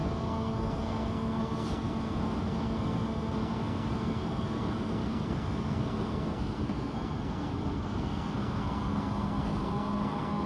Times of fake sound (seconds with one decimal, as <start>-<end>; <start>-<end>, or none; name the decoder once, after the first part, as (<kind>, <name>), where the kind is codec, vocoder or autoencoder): 0.0-10.5 (codec, SNAC)